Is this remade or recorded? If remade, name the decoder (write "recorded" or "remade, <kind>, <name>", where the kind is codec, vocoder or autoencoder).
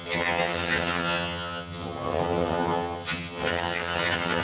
remade, vocoder, HiFi-GAN